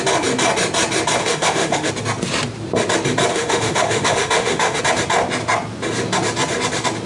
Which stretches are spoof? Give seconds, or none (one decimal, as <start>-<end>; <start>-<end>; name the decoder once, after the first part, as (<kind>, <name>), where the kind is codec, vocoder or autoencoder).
1.2-1.9 (autoencoder, DAC-VAE); 3.3-4.8